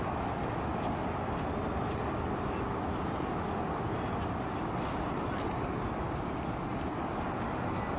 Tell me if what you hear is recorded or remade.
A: recorded